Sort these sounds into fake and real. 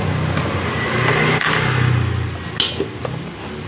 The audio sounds real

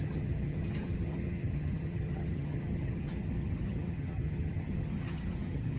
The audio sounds fake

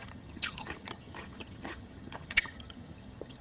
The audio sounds fake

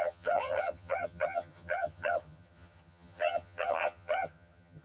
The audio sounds fake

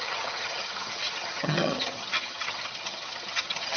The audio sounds fake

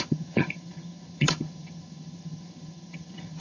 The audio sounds fake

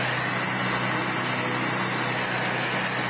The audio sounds real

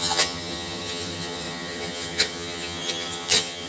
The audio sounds fake